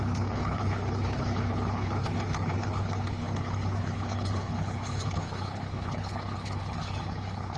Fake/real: fake